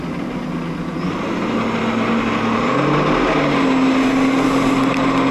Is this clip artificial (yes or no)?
no